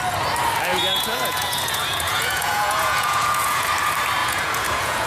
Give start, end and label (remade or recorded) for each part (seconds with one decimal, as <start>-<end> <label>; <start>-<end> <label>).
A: 0.0-0.7 recorded; 0.7-3.7 remade; 3.7-4.2 recorded; 4.2-5.1 remade